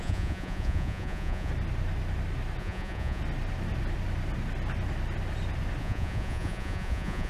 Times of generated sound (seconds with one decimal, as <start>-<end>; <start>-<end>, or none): 0.0-1.5; 2.6-3.2; 5.8-7.3